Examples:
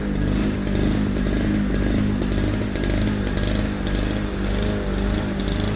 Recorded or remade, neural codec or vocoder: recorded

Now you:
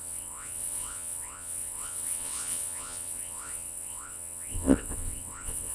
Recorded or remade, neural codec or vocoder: remade, vocoder, WaveNeXt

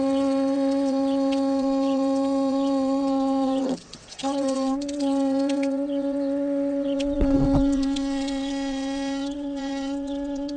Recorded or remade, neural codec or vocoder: remade, vocoder, WaveNeXt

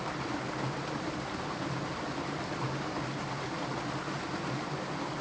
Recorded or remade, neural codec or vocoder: recorded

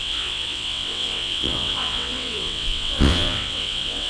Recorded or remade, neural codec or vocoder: remade, vocoder, WaveNeXt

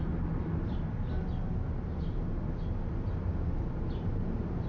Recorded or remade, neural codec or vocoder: recorded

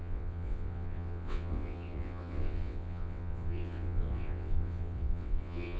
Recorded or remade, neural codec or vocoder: remade, vocoder, WaveNeXt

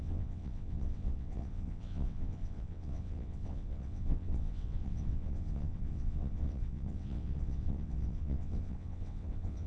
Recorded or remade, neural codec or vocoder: remade, vocoder, WaveNeXt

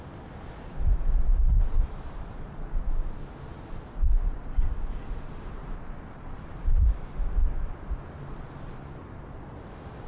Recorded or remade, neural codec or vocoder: recorded